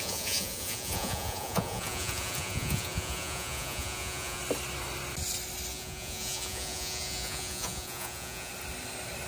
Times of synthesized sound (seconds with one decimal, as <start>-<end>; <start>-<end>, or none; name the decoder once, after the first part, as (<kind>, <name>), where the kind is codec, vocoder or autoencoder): 0.0-4.4 (vocoder, Vocos); 5.7-8.5